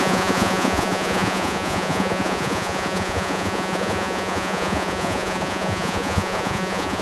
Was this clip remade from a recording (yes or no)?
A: yes